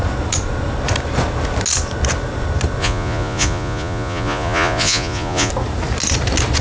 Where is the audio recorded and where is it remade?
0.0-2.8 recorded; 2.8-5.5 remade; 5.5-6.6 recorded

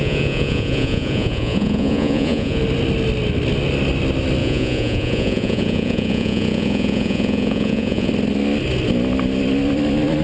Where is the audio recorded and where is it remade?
0.0-2.6 remade; 2.6-4.4 recorded; 4.4-8.1 remade; 8.1-10.2 recorded